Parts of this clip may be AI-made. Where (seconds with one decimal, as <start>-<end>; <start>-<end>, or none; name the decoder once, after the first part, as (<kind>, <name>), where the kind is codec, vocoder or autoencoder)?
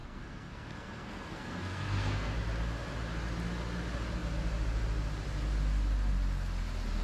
0.0-2.3 (codec, SNAC)